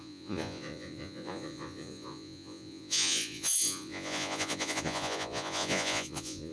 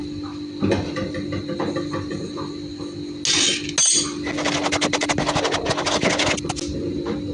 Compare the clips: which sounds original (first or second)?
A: second